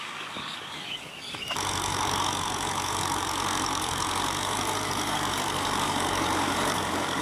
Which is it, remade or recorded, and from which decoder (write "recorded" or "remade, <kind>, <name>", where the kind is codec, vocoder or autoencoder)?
remade, codec, DAC